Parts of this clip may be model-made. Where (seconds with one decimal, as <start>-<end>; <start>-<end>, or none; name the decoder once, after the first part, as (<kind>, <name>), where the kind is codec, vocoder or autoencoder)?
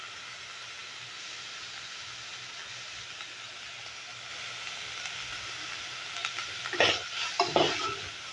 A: none